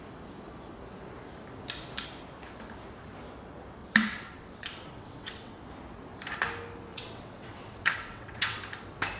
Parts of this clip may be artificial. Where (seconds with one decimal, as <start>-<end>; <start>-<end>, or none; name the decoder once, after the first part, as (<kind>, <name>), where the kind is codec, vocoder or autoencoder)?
3.8-5.6 (vocoder, WaveNeXt); 6.9-8.6